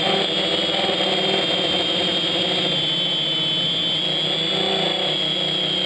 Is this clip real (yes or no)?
yes